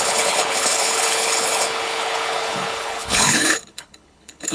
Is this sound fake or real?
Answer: fake